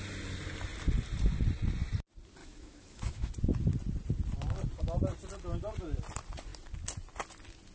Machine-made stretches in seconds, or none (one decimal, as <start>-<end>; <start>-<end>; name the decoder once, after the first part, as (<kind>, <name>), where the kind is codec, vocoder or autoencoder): 2.4-3.3 (autoencoder, DAC-VAE)